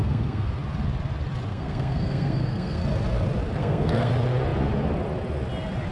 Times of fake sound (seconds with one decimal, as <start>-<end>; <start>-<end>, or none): 0.0-0.5; 1.5-2.8; 3.6-4.1